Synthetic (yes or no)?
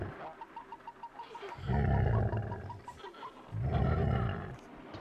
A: no